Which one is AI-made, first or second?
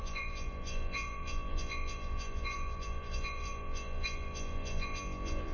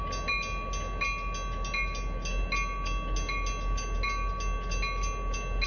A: first